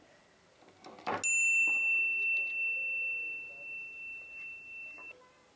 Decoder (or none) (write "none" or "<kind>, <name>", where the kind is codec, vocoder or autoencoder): none